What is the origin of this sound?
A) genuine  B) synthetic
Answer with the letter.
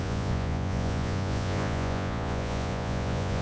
B